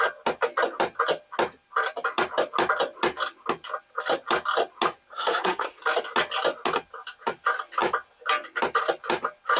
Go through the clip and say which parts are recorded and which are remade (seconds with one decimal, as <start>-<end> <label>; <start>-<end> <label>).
0.0-5.1 recorded; 5.1-5.8 remade; 5.8-9.6 recorded